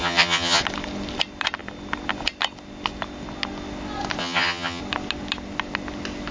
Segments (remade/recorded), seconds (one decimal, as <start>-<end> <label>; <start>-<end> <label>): 0.0-0.6 remade; 0.6-4.2 recorded; 4.2-4.8 remade; 4.8-6.3 recorded